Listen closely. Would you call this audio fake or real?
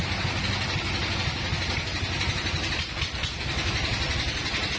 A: real